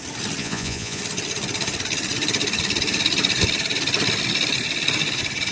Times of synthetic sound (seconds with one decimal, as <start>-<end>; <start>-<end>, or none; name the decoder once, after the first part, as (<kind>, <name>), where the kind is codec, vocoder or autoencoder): 0.4-1.0 (vocoder, Vocos)